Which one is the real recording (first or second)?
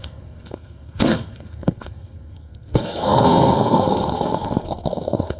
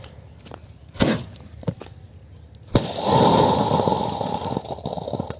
second